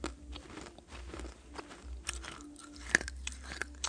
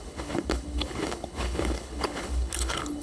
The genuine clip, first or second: first